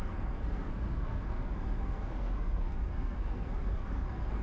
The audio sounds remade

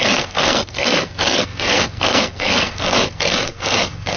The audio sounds remade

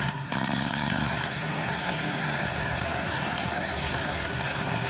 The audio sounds remade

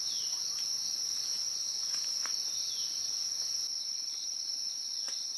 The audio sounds recorded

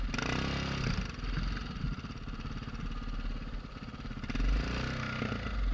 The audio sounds recorded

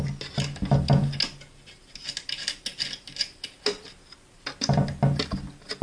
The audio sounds recorded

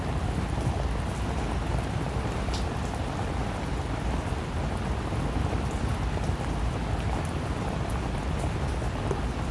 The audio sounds recorded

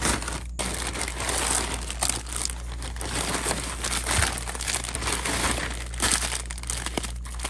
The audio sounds recorded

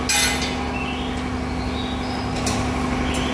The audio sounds recorded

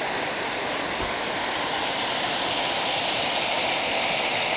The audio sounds recorded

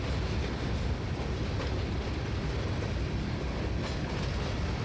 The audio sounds recorded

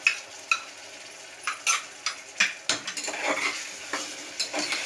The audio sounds recorded